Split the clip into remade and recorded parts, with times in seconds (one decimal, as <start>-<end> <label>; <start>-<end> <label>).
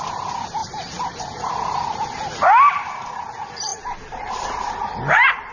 0.0-5.5 recorded